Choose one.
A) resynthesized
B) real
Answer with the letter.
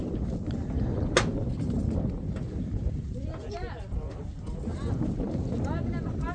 B